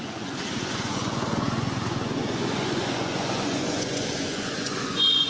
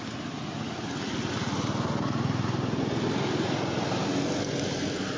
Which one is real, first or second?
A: second